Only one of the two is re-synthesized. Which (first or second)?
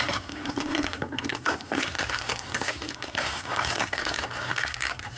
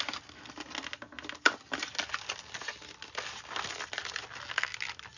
first